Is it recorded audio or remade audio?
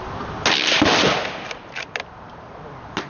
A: recorded